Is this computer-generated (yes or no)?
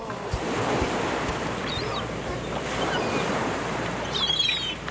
yes